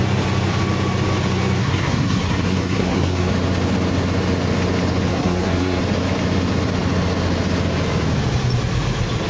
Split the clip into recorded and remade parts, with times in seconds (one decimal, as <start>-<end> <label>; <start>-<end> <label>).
0.0-1.6 recorded; 1.6-3.3 remade; 3.3-5.1 recorded; 5.1-5.8 remade; 5.8-9.3 recorded